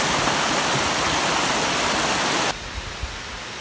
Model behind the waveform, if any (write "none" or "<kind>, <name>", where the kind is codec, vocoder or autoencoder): none